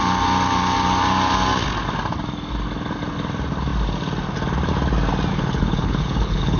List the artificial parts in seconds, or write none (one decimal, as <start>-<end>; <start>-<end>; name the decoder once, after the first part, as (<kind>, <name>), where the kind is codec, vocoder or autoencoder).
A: 5.3-6.6 (codec, HILCodec)